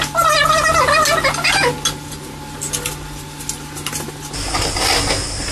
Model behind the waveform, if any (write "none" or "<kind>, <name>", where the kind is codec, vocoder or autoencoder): none